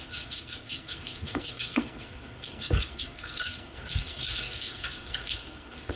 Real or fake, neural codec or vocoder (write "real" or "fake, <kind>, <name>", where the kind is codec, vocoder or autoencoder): fake, codec, SNAC